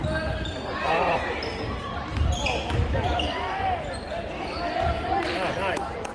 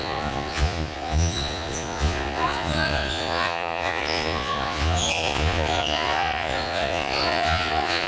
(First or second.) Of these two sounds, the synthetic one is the second